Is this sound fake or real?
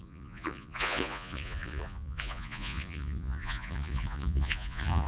fake